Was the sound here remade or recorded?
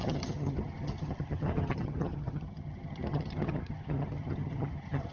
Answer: remade